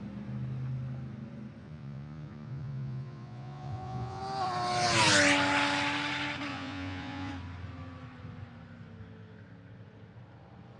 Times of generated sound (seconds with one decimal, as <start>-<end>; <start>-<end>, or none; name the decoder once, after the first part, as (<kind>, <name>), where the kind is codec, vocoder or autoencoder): 1.6-4.2 (vocoder, Vocos); 6.5-7.3